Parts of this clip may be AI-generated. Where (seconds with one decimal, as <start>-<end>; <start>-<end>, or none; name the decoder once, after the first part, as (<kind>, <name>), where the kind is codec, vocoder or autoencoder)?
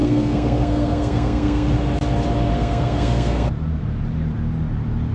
0.0-1.7 (codec, SNAC); 2.5-3.5